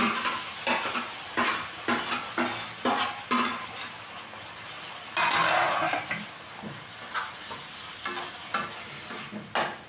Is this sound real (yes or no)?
yes